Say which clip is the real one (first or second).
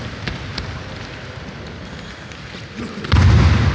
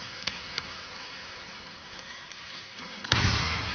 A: first